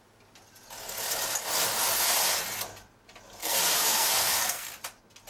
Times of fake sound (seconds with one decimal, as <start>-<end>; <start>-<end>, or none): 3.4-4.7